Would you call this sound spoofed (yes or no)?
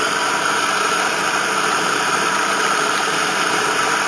yes